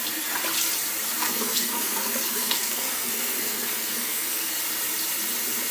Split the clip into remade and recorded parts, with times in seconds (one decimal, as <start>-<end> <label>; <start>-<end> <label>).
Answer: 0.0-1.2 recorded; 1.2-4.6 remade; 4.6-5.7 recorded